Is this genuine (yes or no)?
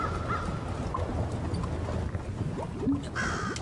yes